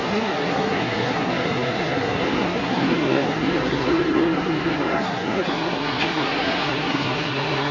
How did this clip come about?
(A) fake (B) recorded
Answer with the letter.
A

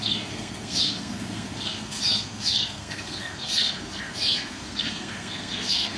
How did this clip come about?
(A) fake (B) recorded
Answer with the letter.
A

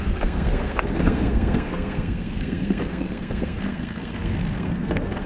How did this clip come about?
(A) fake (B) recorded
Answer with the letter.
A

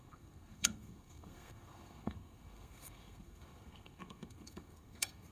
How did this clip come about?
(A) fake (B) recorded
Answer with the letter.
A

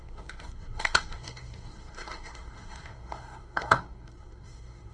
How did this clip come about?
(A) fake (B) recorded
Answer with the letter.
A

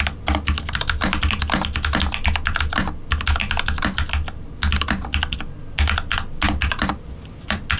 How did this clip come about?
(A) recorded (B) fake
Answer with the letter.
A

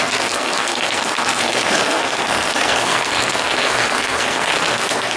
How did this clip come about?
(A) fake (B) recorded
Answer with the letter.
A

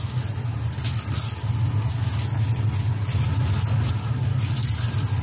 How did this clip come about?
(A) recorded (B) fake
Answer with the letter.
A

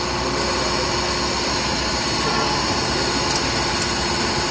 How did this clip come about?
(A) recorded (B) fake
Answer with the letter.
A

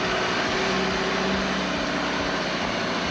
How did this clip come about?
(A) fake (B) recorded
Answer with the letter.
B